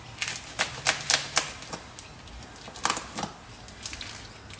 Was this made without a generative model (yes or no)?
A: yes